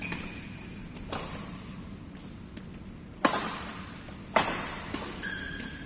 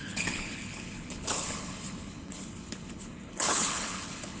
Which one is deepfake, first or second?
second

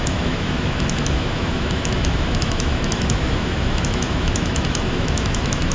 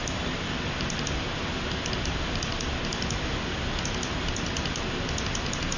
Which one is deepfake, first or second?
first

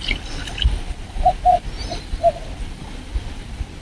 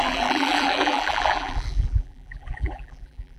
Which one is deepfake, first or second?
second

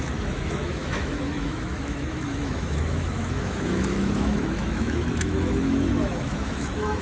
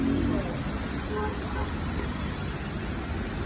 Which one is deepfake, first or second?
first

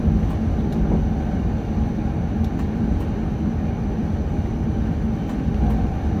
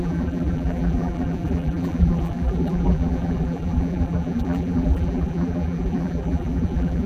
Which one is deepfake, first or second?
second